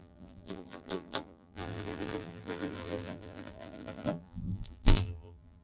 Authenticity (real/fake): fake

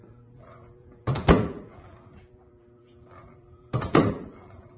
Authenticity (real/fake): fake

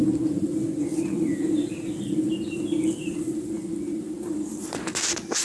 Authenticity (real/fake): real